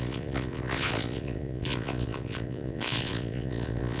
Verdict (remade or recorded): remade